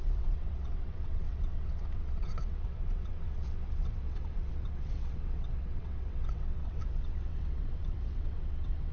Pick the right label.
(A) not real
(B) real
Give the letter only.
A